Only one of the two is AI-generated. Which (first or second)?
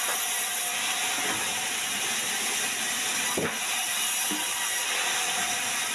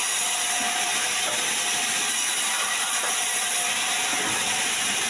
second